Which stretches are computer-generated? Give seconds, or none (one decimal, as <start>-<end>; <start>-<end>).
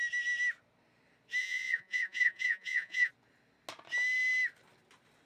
1.4-3.1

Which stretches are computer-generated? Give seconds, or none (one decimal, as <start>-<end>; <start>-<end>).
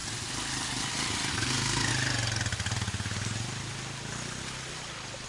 1.3-1.9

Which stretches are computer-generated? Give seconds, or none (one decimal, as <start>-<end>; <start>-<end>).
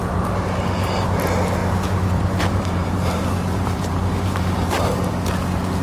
1.6-5.1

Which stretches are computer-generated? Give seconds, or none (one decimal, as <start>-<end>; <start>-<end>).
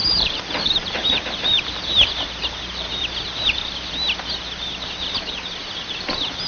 0.0-3.9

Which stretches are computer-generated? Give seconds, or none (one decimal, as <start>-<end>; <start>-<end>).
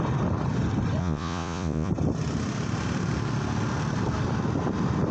1.0-1.9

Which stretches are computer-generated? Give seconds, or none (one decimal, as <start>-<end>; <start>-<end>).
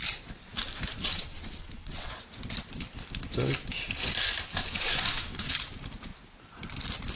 1.0-2.1; 4.6-5.5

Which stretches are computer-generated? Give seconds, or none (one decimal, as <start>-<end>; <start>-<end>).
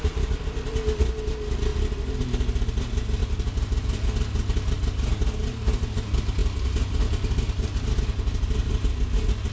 none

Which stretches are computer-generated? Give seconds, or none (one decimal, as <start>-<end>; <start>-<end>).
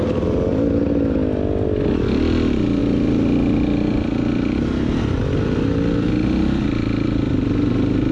none